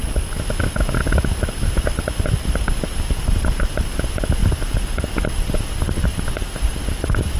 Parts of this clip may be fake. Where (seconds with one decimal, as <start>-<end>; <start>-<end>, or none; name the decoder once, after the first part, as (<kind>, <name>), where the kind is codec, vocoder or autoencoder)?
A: 2.4-7.4 (vocoder, BigVGAN v2)